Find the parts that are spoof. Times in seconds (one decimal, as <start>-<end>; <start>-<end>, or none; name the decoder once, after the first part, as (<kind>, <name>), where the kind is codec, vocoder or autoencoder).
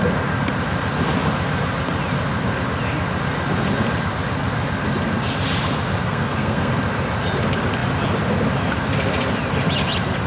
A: 6.0-6.7 (codec, SNAC)